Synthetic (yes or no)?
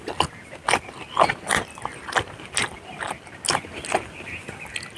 no